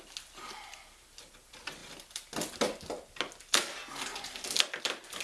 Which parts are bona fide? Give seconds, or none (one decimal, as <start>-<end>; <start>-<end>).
0.0-5.2